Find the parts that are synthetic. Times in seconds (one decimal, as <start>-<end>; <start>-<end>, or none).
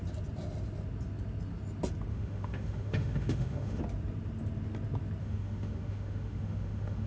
2.1-3.8; 5.2-7.1